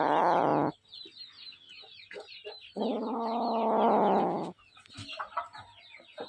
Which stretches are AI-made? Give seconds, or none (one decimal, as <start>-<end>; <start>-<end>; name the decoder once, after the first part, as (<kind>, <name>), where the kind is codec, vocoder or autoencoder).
none